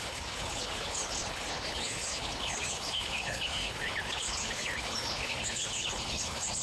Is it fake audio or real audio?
fake